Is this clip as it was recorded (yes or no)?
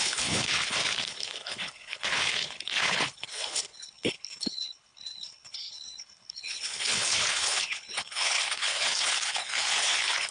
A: no